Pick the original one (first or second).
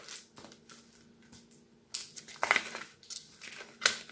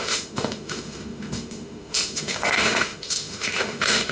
first